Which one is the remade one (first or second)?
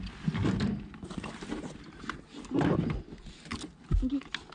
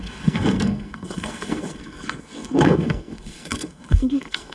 second